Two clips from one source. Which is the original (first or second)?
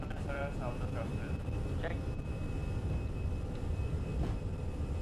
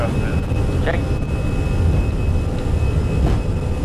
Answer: second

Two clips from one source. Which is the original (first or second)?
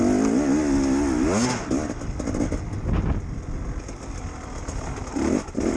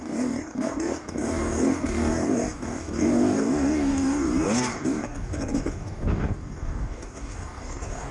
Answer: first